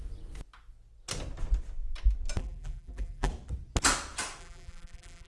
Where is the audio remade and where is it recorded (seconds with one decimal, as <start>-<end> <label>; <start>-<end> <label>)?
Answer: 0.0-2.4 recorded; 2.4-3.3 remade; 3.3-4.4 recorded; 4.4-5.3 remade